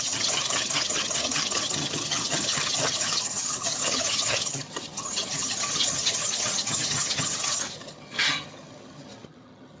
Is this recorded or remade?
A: remade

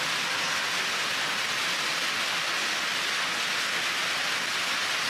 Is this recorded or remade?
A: recorded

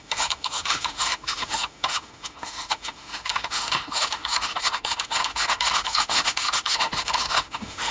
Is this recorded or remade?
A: remade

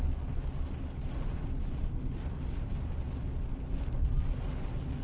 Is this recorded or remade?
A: recorded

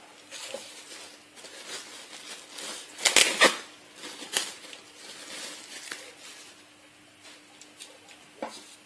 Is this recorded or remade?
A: recorded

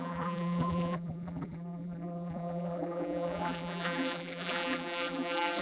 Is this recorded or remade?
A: remade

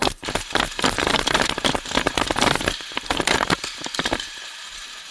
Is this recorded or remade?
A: remade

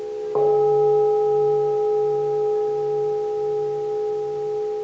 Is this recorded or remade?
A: recorded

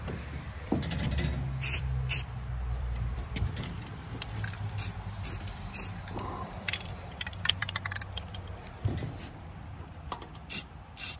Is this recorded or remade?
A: remade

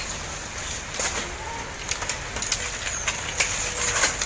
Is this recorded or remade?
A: recorded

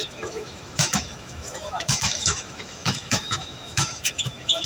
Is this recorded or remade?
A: remade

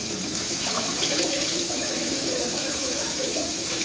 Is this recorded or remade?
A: remade